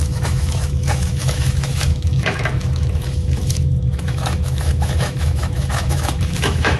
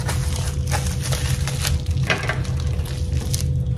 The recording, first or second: second